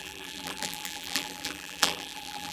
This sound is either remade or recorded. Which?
remade